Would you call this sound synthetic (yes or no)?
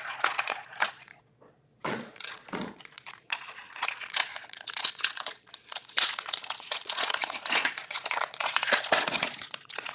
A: yes